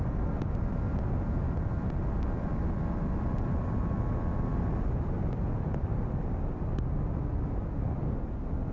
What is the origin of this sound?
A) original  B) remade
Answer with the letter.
A